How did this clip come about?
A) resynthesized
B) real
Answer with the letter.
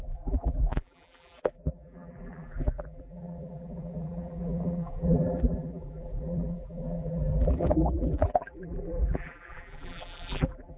A